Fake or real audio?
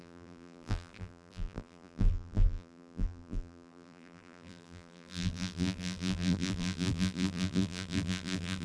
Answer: fake